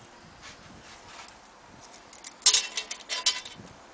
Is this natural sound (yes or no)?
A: yes